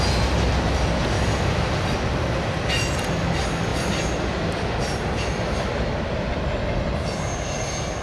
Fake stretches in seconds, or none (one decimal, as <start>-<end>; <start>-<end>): none